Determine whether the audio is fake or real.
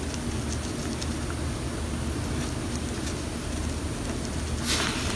real